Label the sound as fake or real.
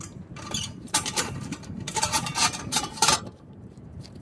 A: fake